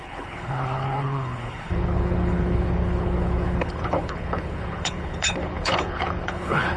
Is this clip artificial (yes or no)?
yes